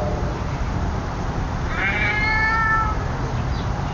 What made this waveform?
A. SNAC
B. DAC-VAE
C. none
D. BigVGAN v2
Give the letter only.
D